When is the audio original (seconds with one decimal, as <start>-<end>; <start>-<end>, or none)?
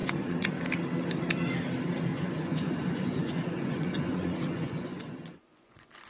0.5-2.1